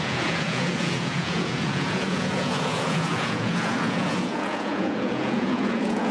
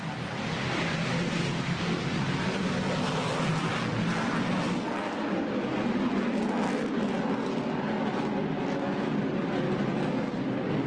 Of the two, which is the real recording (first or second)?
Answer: second